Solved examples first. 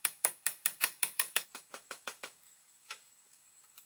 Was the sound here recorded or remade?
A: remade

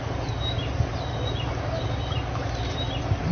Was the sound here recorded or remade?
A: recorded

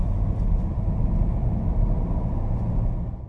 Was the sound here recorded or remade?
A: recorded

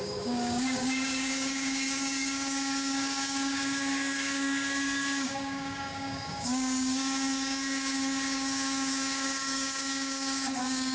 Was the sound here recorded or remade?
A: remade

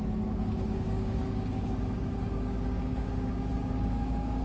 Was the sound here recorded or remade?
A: remade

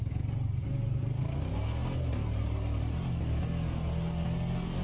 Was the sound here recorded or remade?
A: recorded